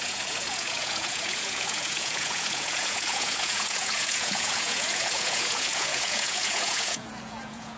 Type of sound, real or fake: fake